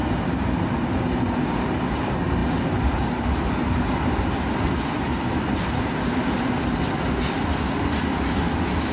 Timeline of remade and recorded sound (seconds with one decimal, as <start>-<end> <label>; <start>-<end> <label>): 0.0-8.9 recorded